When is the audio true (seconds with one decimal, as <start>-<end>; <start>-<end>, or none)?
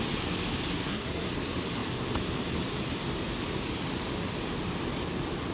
0.0-0.7; 1.3-5.5